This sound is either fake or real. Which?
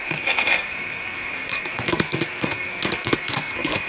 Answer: fake